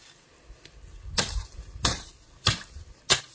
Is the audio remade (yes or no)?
no